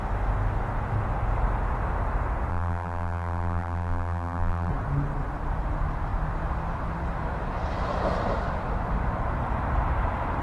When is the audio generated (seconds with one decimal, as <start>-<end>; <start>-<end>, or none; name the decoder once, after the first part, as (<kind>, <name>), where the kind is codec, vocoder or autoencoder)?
2.5-4.7 (vocoder, BigVGAN v2)